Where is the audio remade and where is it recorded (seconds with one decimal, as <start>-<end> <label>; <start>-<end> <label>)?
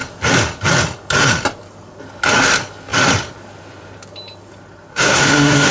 0.0-4.9 recorded; 4.9-5.7 remade